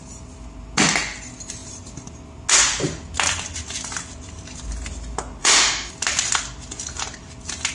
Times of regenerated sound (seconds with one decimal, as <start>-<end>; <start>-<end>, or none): 5.4-5.9